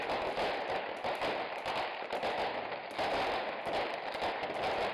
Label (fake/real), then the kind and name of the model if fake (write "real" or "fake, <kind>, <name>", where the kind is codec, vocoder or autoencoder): real